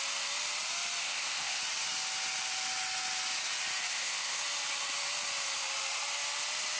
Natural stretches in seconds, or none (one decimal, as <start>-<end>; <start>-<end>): 0.0-1.0; 1.6-3.9; 4.4-6.8